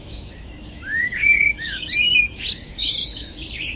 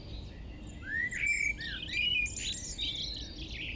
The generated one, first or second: first